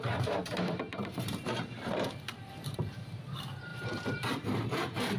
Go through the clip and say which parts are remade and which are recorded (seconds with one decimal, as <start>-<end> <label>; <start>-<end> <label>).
0.0-5.2 remade